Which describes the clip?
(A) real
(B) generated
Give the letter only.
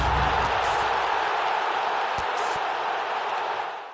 A